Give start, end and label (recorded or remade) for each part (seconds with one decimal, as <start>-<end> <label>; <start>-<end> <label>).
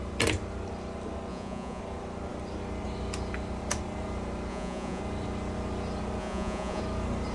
0.0-1.3 recorded; 1.3-1.8 remade; 1.8-4.5 recorded; 4.5-5.0 remade; 5.0-6.2 recorded; 6.2-6.8 remade; 6.8-7.3 recorded